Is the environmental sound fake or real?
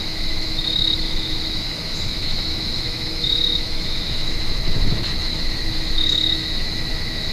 fake